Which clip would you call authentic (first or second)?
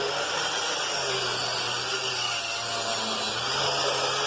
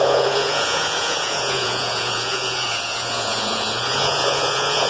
first